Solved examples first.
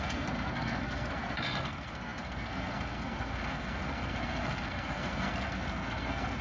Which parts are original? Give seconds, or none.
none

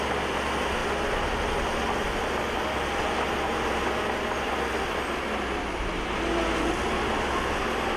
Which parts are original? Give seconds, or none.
0.0-8.0

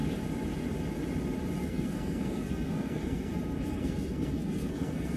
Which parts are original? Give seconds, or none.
0.0-1.6; 3.3-3.7

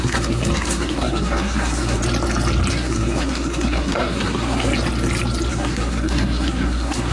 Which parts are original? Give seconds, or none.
2.0-2.7; 4.7-5.5

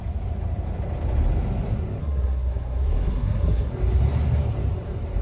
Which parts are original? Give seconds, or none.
0.0-2.0; 3.7-5.2